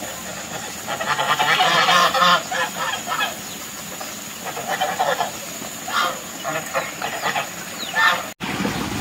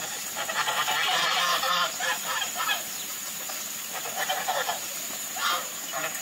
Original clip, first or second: first